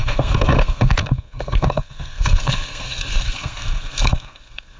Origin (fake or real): fake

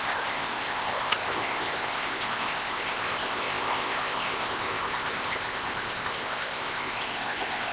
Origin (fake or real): fake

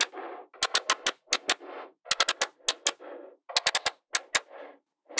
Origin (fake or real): real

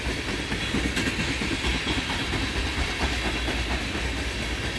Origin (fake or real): real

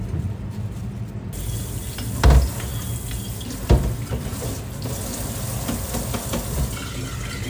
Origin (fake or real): real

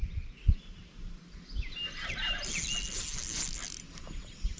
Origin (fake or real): real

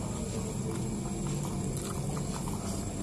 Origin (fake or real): real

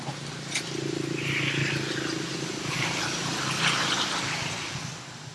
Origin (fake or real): real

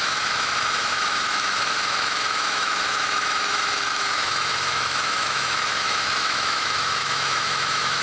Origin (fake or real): fake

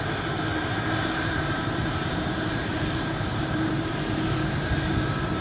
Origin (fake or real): fake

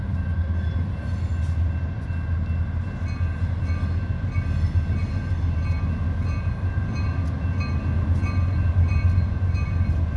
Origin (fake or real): real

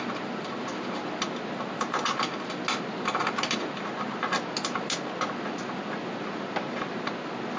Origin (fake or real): real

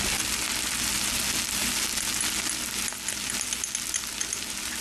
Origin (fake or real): real